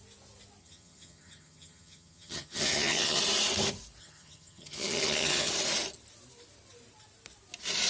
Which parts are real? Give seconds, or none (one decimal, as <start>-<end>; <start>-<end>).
0.0-0.6; 3.2-4.0; 5.5-7.9